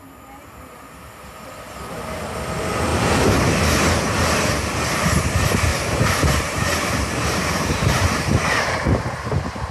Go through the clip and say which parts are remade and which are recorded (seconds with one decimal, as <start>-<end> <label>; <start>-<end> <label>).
0.0-5.7 recorded; 5.7-8.6 remade; 8.6-9.7 recorded